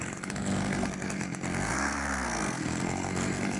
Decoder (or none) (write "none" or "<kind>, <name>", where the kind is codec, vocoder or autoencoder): codec, SNAC